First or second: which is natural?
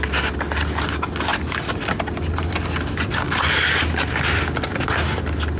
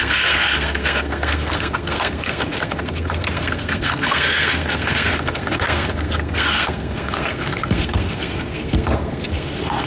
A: first